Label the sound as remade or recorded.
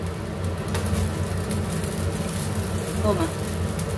recorded